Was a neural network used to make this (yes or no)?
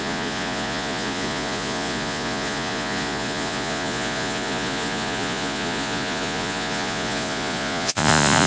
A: yes